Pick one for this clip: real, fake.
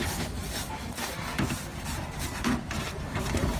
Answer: fake